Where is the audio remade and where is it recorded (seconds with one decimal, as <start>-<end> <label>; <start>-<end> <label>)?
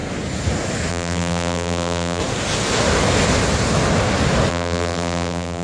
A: 0.0-0.9 recorded; 0.9-2.2 remade; 2.2-4.5 recorded; 4.5-5.6 remade